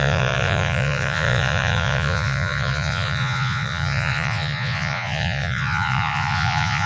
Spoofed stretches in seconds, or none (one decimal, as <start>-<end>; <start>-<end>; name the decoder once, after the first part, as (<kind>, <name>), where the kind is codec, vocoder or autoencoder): 0.0-6.9 (vocoder, Vocos)